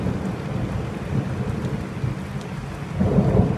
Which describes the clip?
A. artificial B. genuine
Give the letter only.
B